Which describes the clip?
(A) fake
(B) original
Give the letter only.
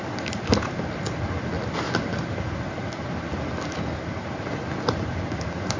B